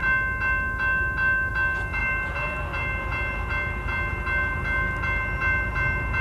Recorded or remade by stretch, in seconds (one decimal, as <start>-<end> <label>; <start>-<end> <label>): 0.0-6.2 recorded

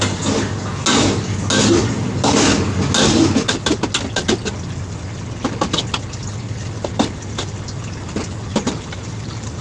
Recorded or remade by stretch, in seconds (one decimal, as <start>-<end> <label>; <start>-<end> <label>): 0.0-8.5 recorded; 8.5-9.6 remade

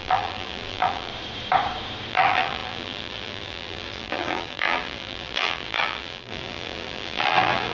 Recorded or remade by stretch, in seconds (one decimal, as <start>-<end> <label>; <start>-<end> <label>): 0.0-1.1 remade; 1.1-2.1 recorded; 2.1-7.7 remade

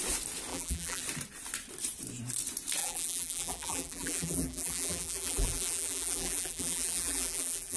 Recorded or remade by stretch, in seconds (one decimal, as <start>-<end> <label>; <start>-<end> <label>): 0.0-0.5 recorded; 0.5-1.0 remade; 1.0-2.8 recorded; 2.8-7.8 remade